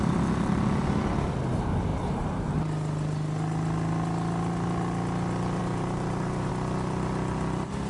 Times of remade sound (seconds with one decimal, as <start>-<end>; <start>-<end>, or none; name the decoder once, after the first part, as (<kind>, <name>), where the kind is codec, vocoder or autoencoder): 1.9-2.5 (vocoder, BigVGAN v2); 5.6-6.5